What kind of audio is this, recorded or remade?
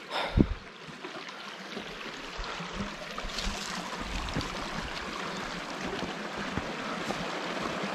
recorded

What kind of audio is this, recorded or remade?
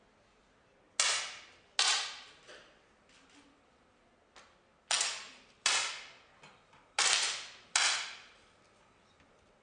recorded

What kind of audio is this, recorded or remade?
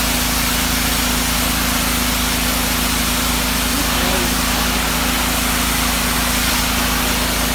recorded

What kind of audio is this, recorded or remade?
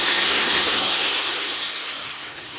remade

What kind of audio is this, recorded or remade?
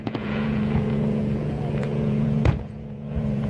remade